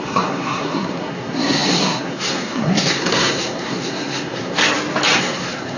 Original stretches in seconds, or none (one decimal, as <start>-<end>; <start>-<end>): 4.6-5.2